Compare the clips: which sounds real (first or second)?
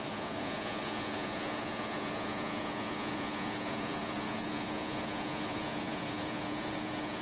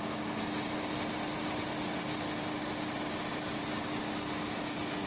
second